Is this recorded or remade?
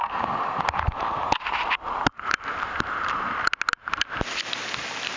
recorded